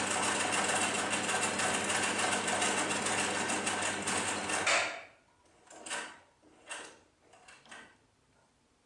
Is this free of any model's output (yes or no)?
yes